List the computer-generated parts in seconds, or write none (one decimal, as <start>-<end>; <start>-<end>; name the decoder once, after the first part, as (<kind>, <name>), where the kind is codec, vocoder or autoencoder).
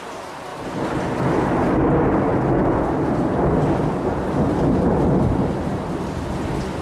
none